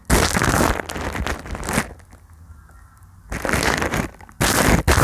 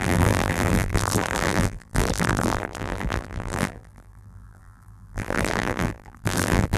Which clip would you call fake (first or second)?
second